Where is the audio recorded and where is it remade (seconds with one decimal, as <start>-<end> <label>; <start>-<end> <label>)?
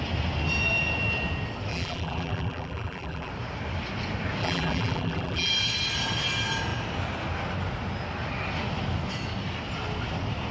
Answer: 0.0-1.7 recorded; 1.7-3.3 remade; 3.3-4.4 recorded; 4.4-5.5 remade; 5.5-10.5 recorded